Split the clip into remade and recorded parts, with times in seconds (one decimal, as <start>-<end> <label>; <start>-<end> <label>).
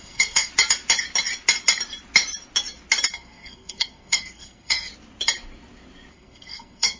0.0-0.5 remade; 0.5-3.1 recorded; 3.1-4.9 remade; 4.9-6.1 recorded; 6.1-7.0 remade